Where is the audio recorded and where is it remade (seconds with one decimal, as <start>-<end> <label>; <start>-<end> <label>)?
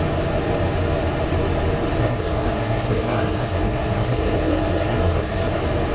0.0-2.0 recorded; 2.0-5.5 remade; 5.5-5.9 recorded